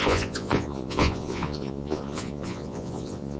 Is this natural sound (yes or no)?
no